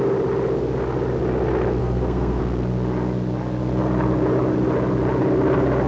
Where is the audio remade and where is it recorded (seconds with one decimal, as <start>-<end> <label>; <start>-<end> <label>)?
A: 0.0-1.8 recorded; 1.8-2.4 remade; 2.4-5.9 recorded